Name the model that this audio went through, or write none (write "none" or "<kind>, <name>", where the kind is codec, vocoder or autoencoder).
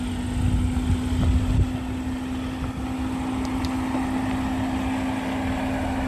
none